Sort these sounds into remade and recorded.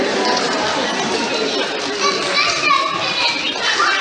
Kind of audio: recorded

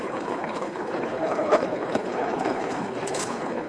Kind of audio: remade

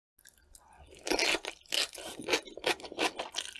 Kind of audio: recorded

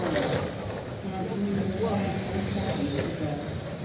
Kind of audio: recorded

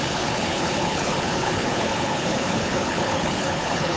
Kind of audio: remade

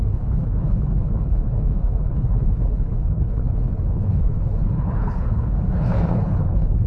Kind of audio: remade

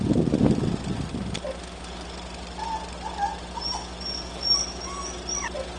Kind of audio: recorded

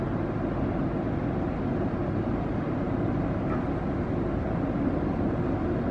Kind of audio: recorded